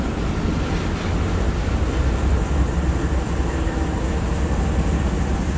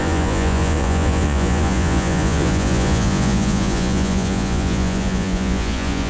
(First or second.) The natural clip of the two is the first